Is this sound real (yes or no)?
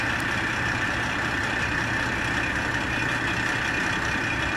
yes